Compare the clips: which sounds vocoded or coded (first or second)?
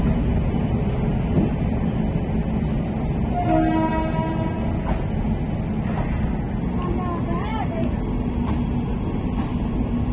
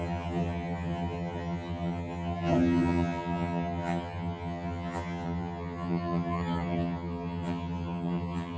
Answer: second